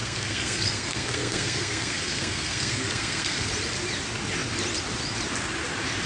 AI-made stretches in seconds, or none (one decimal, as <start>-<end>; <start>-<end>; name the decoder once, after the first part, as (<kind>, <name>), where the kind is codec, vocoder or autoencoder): 0.0-3.5 (codec, SNAC)